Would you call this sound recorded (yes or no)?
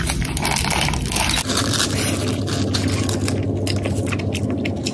yes